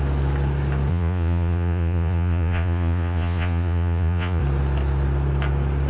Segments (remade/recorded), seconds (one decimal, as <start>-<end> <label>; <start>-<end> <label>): 0.0-0.9 recorded; 0.9-4.4 remade; 4.4-5.9 recorded